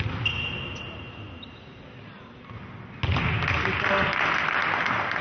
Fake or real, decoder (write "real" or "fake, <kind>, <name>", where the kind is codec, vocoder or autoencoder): real